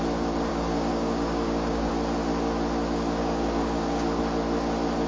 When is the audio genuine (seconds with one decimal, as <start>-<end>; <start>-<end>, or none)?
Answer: 0.0-0.5; 1.9-3.2; 4.2-5.1